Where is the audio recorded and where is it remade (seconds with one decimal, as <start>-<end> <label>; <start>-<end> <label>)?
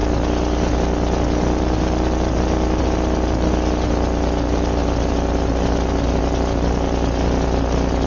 0.0-8.1 recorded